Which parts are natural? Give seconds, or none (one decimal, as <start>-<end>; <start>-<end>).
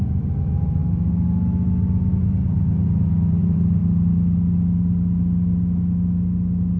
0.8-2.2; 3.8-6.8